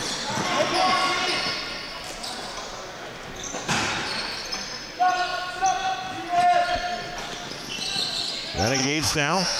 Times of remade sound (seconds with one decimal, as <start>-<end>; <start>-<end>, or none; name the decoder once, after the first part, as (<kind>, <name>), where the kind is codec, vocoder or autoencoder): 8.8-9.6 (autoencoder, DAC-VAE)